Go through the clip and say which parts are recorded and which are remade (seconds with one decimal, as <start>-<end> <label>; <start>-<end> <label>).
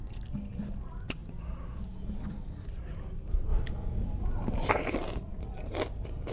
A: 0.0-1.2 remade; 1.2-2.7 recorded; 2.7-6.3 remade